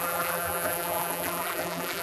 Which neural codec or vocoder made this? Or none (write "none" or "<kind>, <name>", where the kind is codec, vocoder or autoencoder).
vocoder, BigVGAN v2